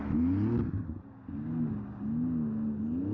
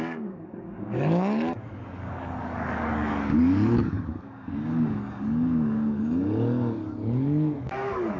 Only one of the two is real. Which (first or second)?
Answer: first